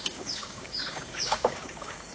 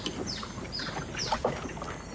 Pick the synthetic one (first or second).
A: first